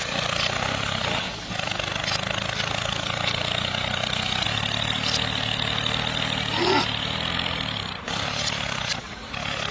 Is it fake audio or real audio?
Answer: real